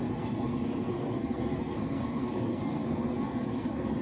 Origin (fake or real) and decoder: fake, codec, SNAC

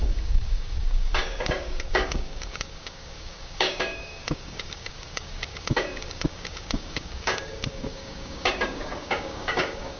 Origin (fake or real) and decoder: fake, codec, DAC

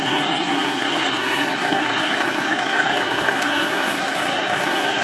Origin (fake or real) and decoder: fake, codec, SNAC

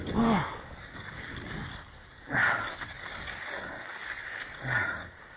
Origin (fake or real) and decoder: fake, codec, DAC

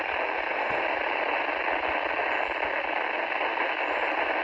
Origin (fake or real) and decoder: real